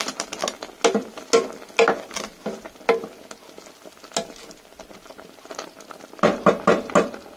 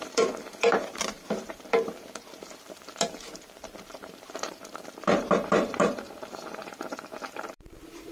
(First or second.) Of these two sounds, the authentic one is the first